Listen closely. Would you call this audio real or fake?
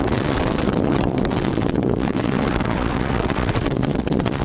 fake